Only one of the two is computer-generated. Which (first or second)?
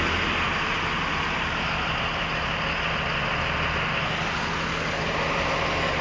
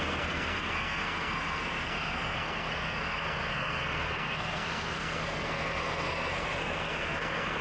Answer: second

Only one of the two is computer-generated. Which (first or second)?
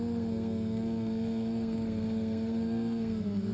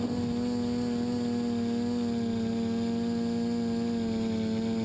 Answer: first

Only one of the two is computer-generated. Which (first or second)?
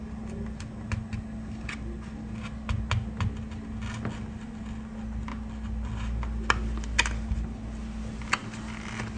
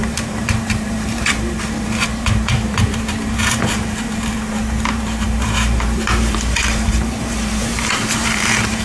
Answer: second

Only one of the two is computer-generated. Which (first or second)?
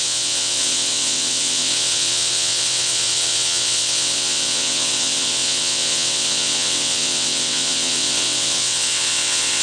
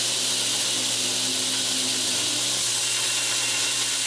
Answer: first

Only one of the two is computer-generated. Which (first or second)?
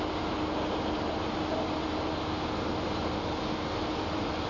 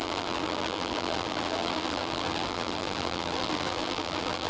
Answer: second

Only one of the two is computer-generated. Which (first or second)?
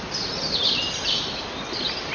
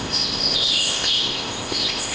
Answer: second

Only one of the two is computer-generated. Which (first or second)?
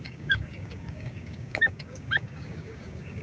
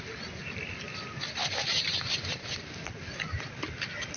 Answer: first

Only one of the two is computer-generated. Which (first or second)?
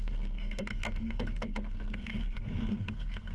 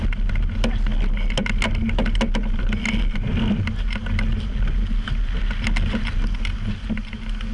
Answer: first